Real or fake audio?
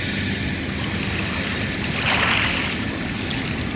real